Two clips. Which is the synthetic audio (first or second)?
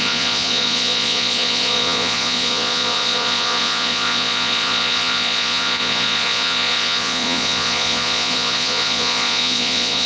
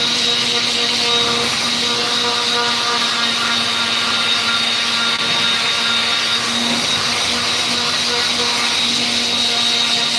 first